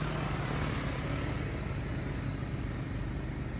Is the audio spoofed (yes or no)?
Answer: no